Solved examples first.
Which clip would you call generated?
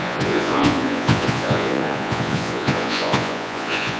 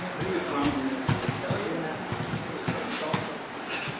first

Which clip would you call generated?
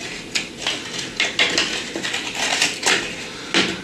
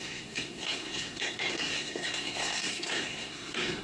second